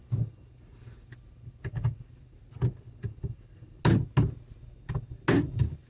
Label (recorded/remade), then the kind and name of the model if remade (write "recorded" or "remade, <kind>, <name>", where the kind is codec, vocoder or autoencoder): recorded